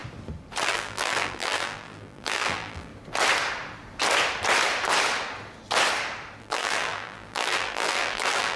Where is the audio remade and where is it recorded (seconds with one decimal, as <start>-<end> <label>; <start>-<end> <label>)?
0.0-0.6 recorded; 0.6-2.9 remade; 2.9-6.4 recorded; 6.4-8.6 remade